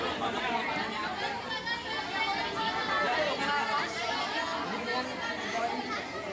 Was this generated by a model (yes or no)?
no